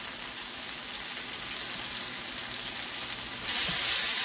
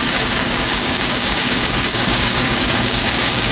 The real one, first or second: first